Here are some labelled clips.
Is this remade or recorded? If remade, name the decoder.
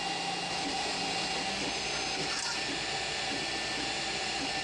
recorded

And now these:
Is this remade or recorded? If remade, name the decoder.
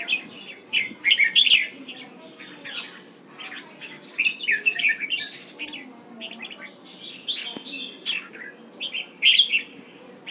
recorded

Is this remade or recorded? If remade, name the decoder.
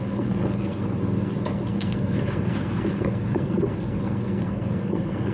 remade, codec, SNAC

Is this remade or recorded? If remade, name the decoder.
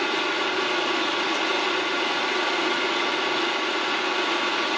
remade, vocoder, Vocos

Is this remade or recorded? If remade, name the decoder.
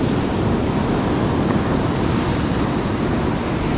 recorded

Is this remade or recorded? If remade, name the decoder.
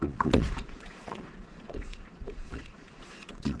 remade, vocoder, Vocos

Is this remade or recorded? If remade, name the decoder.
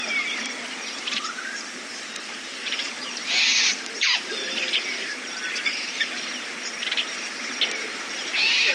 remade, vocoder, BigVGAN v2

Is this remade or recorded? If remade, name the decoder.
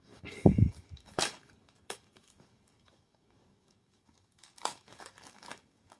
remade, codec, DAC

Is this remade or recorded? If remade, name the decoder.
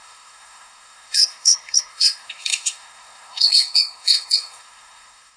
remade, codec, SNAC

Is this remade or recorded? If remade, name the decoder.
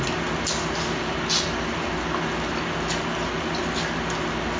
recorded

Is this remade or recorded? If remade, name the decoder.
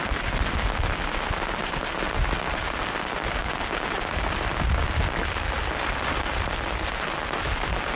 recorded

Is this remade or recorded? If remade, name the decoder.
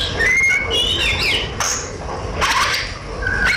recorded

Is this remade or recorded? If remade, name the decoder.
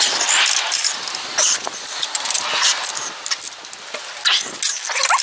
recorded